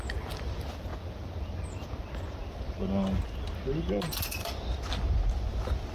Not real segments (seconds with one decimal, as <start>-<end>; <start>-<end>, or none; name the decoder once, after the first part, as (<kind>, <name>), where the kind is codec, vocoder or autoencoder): none